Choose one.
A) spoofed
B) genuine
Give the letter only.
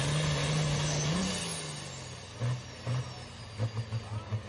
B